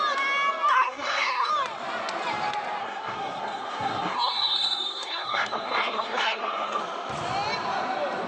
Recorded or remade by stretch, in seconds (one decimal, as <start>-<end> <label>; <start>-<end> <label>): 0.0-0.7 recorded; 0.7-1.5 remade; 1.5-2.8 recorded; 2.8-6.8 remade; 6.8-8.3 recorded